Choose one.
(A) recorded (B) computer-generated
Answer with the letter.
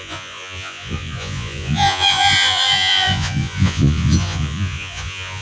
B